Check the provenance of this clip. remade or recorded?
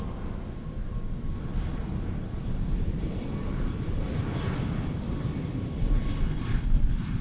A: recorded